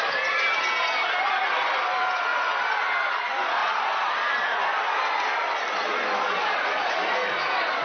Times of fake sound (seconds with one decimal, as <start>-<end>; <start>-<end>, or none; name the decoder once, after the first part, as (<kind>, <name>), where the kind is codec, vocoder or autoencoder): 3.6-4.1 (vocoder, BigVGAN v2)